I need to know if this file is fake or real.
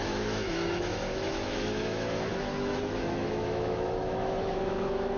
fake